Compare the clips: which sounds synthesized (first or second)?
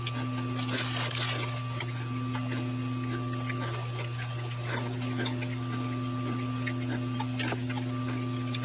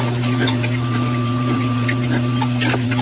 second